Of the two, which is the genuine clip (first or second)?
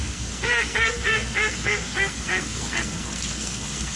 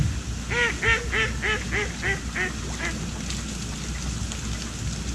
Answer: second